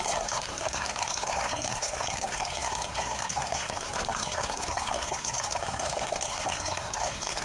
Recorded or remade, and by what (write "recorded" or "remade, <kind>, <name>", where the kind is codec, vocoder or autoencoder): remade, codec, SNAC